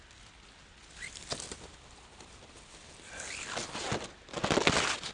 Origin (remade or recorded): recorded